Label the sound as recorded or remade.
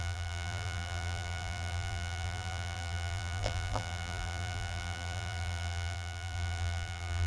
remade